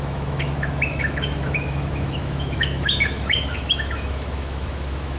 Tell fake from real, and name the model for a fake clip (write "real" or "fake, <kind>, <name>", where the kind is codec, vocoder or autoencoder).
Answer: fake, autoencoder, DAC-VAE